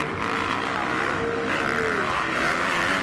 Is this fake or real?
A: real